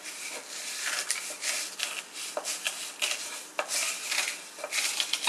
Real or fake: real